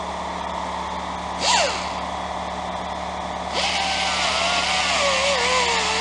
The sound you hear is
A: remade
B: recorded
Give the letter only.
B